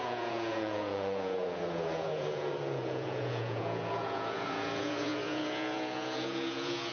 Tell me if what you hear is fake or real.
fake